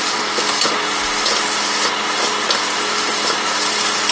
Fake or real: real